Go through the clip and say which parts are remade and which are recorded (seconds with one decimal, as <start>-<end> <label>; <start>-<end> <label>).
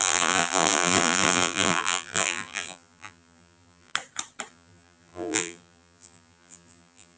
0.0-3.9 remade; 3.9-4.5 recorded; 4.5-7.2 remade